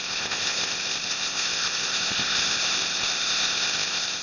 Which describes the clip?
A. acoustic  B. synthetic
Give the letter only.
B